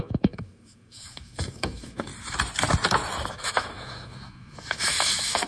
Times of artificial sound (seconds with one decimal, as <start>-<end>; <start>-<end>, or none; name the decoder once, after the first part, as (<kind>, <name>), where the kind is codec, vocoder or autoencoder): 0.0-2.1 (autoencoder, DAC-VAE); 3.3-5.5